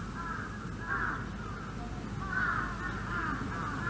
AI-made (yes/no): no